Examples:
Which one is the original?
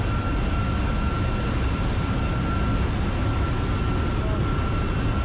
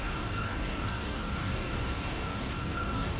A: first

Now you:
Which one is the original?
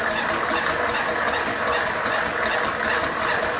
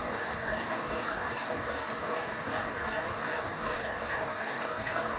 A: first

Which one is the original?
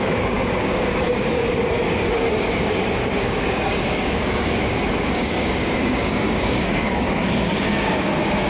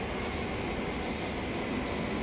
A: second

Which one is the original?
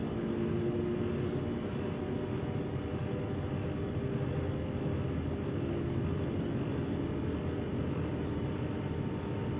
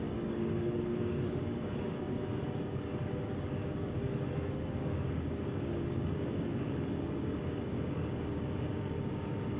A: first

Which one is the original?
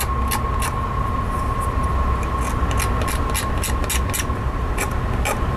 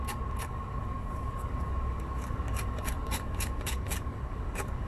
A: first